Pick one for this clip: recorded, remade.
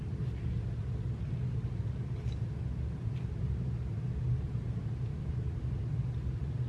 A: recorded